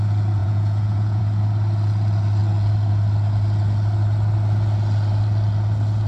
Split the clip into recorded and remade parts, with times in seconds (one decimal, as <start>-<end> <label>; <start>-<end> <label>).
0.0-0.4 recorded; 0.4-1.2 remade; 1.2-6.1 recorded